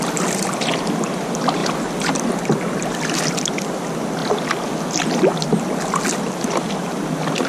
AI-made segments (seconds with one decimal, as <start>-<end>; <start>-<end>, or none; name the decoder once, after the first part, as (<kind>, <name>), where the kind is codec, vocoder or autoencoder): 1.6-2.1 (vocoder, BigVGAN v2)